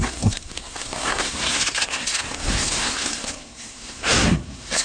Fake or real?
fake